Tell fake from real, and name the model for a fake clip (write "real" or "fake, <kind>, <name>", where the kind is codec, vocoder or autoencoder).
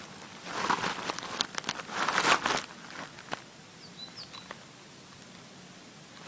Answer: real